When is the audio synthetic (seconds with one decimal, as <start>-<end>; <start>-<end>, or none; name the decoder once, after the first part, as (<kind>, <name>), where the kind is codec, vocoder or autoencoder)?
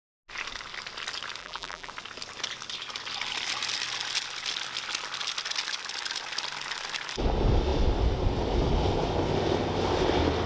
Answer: 1.4-1.9 (vocoder, BigVGAN v2)